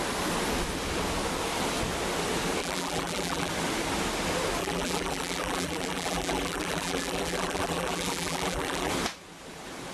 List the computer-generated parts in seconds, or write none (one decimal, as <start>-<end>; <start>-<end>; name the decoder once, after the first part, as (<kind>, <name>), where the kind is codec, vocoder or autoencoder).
2.6-3.5 (vocoder, BigVGAN v2); 4.6-8.9